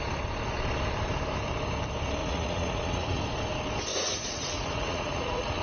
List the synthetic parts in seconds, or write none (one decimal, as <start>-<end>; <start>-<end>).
2.2-3.2; 3.9-5.6